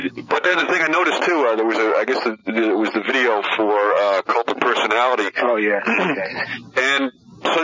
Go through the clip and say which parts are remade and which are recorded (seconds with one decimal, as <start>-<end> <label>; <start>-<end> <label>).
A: 0.0-0.7 remade; 0.7-7.6 recorded